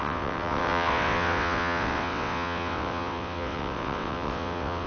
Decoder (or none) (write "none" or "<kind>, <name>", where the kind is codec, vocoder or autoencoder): vocoder, WaveNeXt